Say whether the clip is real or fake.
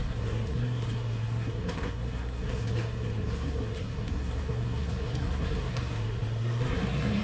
fake